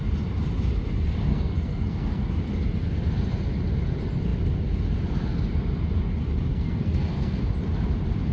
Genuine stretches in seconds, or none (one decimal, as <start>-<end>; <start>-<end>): 0.0-1.3; 2.3-6.5; 7.4-8.3